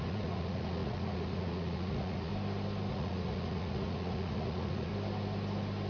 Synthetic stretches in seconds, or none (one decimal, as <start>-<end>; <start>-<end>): 0.0-2.3; 2.9-4.9